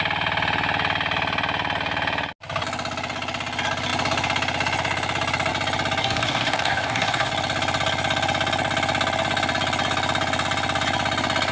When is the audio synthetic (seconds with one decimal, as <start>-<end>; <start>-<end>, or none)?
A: 6.0-7.3